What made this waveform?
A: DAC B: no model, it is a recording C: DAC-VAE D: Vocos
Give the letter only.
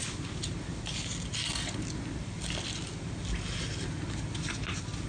B